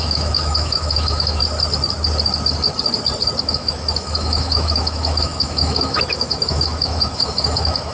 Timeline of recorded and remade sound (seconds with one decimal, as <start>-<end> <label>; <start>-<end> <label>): 0.0-1.4 remade; 1.4-3.4 recorded; 3.4-7.9 remade